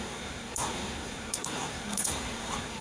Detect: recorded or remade remade